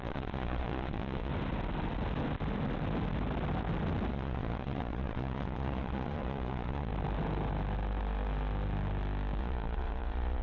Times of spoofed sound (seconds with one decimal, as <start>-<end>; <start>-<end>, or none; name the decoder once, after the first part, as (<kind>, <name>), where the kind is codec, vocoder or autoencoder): 0.0-1.3 (vocoder, Vocos); 4.1-6.9; 9.4-10.4